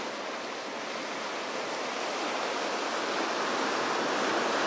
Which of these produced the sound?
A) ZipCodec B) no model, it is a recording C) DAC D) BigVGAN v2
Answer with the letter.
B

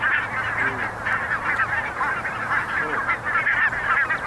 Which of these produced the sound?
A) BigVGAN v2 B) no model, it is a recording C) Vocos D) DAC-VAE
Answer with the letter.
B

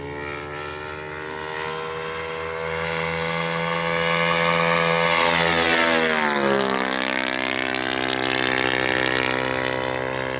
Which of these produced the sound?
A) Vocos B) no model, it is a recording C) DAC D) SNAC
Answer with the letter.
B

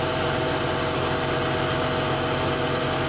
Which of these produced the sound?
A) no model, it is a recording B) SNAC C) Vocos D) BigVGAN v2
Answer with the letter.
A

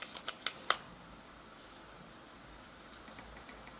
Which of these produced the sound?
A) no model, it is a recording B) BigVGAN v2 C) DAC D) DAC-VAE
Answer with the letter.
A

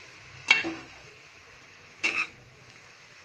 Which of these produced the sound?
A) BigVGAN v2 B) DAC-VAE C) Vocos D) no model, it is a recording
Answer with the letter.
B